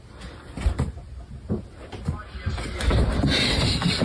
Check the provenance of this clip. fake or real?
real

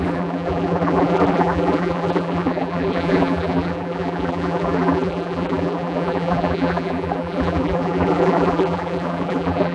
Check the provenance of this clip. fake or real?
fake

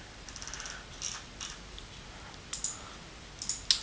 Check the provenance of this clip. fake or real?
real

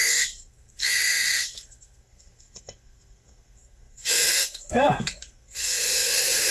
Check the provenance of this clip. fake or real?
fake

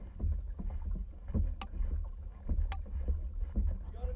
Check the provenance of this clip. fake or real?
real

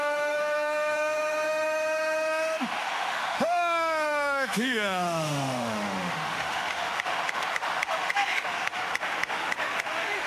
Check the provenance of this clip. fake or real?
fake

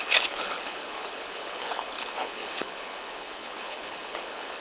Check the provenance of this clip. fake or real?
fake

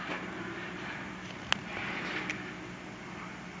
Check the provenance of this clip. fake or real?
real